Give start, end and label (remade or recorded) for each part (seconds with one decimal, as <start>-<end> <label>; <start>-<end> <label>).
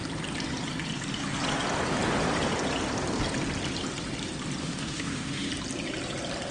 0.0-4.6 recorded; 4.6-5.5 remade; 5.5-6.5 recorded